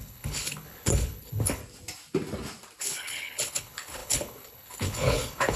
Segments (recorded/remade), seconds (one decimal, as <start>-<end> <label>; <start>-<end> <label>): 0.0-1.6 remade; 1.6-2.8 recorded; 2.8-5.6 remade